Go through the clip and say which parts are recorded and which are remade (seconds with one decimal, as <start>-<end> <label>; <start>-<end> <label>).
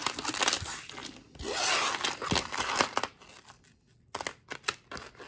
0.0-5.3 recorded